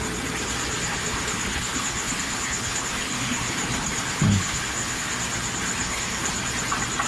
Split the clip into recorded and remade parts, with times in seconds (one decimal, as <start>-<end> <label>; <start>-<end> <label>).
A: 0.0-0.9 recorded; 0.9-5.2 remade; 5.2-5.7 recorded; 5.7-6.3 remade; 6.3-7.1 recorded